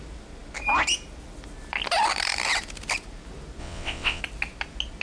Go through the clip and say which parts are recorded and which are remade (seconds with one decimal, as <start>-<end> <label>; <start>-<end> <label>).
0.0-3.6 recorded; 3.6-4.2 remade; 4.2-5.0 recorded